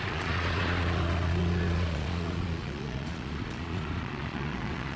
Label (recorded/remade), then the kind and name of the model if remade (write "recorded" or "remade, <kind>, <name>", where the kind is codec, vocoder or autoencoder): remade, vocoder, Vocos